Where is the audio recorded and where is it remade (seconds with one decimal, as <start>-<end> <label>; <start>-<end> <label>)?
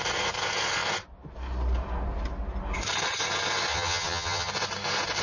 0.0-3.7 recorded; 3.7-4.5 remade; 4.5-5.2 recorded